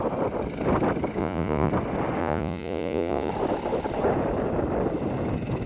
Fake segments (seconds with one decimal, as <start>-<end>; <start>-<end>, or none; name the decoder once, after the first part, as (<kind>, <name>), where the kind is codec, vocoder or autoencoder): 1.2-1.7 (vocoder, Vocos); 2.2-3.3